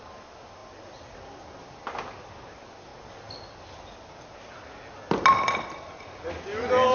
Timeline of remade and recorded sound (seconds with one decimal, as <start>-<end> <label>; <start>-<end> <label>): 0.0-6.9 recorded